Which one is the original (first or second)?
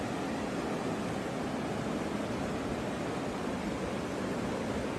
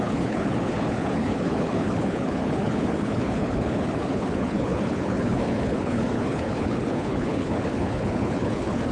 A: first